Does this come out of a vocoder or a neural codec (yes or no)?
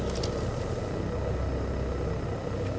no